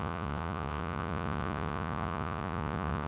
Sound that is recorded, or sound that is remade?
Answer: remade